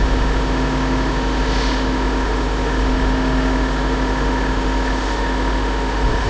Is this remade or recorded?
remade